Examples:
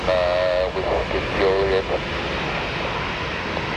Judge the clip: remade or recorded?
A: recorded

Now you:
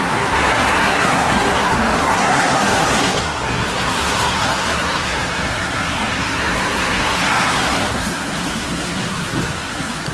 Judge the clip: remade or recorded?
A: remade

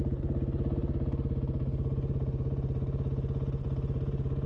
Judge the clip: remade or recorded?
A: recorded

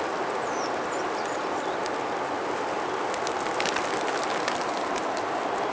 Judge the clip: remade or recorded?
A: recorded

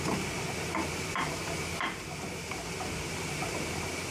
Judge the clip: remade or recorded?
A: recorded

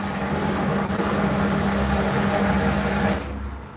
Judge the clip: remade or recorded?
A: recorded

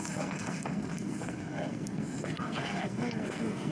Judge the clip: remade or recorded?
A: remade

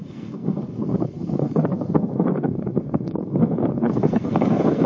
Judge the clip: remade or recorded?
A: remade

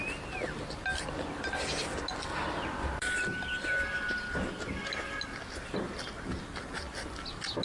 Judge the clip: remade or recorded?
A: recorded